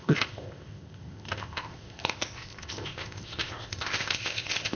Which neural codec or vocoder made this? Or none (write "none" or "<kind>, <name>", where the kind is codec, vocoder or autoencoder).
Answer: codec, ZipCodec